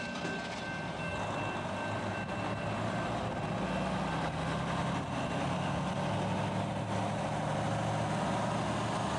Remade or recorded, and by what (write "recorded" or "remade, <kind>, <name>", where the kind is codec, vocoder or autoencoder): recorded